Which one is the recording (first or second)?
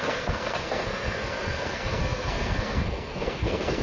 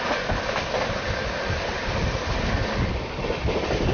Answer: second